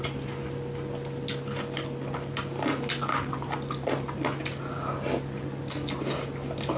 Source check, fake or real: real